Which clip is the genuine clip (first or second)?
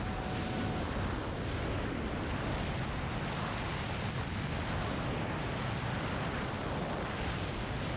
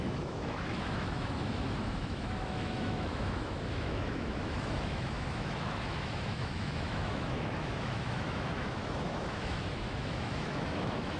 first